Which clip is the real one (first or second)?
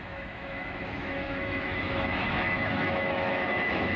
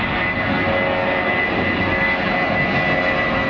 second